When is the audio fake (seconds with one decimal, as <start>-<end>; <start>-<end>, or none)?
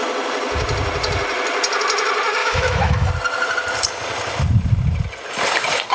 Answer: 2.4-3.1